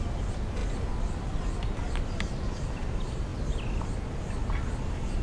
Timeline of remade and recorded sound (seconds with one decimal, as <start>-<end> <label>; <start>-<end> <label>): 0.0-5.2 recorded